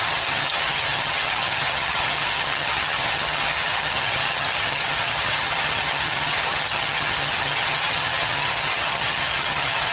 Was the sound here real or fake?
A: fake